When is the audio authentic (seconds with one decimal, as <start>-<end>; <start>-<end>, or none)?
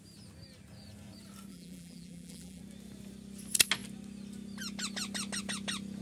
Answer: 0.0-1.5; 2.6-6.0